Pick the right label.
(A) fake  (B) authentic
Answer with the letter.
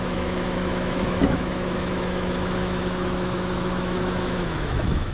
A